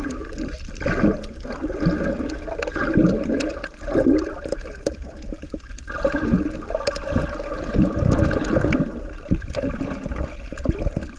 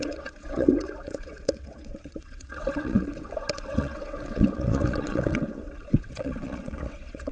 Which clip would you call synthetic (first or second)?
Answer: second